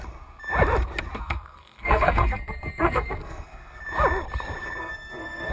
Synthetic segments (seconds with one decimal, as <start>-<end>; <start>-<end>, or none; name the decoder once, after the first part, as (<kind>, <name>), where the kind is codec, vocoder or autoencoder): 1.2-3.8 (codec, SNAC); 4.8-5.5